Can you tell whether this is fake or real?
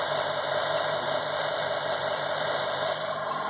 fake